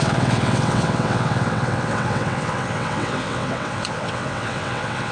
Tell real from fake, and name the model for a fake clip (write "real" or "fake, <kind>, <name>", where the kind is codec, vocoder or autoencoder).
fake, vocoder, WaveNeXt